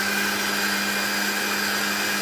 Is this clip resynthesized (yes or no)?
no